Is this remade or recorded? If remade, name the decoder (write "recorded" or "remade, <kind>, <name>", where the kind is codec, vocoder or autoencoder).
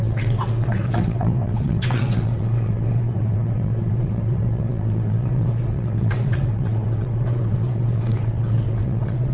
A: remade, vocoder, WaveNeXt